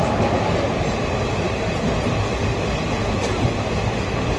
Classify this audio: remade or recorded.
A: recorded